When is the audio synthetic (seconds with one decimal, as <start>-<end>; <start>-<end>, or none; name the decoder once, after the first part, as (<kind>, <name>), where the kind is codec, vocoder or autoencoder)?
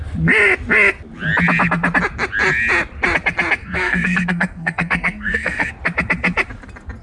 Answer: 3.6-5.7 (codec, SNAC)